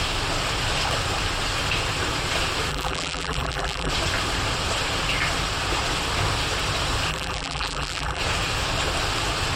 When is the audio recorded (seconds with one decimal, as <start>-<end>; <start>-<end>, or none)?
0.0-2.7; 3.9-7.1; 8.2-9.6